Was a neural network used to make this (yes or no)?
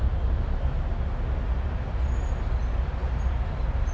no